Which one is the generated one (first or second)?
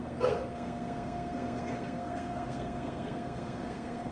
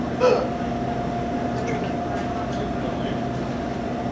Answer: first